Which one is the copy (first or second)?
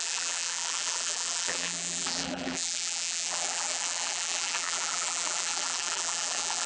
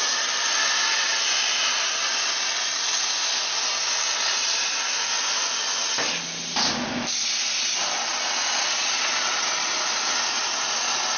first